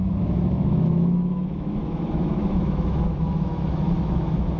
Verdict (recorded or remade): remade